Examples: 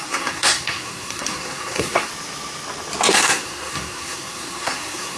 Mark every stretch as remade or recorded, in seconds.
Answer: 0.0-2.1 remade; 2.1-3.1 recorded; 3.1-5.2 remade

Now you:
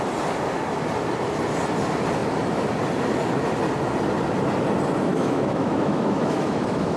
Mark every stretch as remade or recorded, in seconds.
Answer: 0.0-5.1 recorded; 5.1-7.0 remade

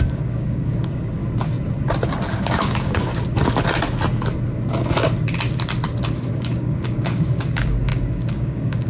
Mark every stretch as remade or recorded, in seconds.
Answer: 0.0-1.2 remade; 1.2-2.3 recorded; 2.3-3.1 remade; 3.1-6.0 recorded; 6.0-8.9 remade

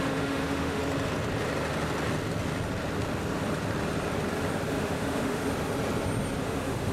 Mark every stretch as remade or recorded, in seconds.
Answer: 0.0-0.8 remade; 0.8-4.7 recorded; 4.7-5.4 remade; 5.4-6.4 recorded; 6.4-6.9 remade

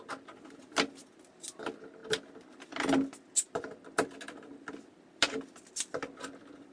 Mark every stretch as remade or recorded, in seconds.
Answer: 0.0-6.7 recorded

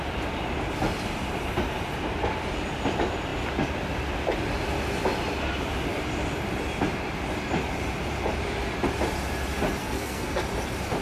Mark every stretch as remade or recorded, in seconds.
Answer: 0.0-9.8 recorded; 9.8-10.4 remade; 10.4-11.0 recorded

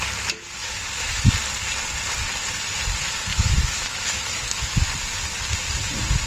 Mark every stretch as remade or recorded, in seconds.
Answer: 0.0-0.6 recorded; 0.6-1.3 remade; 1.3-3.3 recorded; 3.3-4.8 remade; 4.8-6.3 recorded